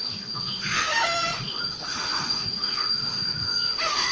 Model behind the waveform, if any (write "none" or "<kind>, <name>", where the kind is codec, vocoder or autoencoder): autoencoder, DAC-VAE